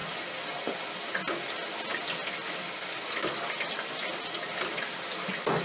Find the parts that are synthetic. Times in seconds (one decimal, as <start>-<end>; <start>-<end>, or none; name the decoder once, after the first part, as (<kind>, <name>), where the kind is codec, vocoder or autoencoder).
none

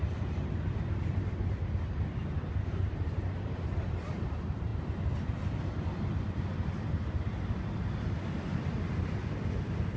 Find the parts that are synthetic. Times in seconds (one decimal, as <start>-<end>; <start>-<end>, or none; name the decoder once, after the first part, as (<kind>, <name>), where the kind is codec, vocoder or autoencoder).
none

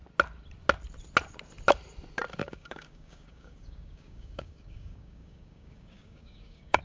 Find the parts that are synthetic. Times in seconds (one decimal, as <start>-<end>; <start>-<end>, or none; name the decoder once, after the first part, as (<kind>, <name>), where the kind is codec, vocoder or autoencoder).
2.4-6.8 (codec, DAC)